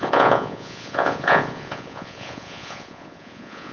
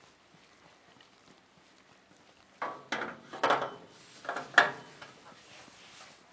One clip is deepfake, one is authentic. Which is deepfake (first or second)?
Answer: first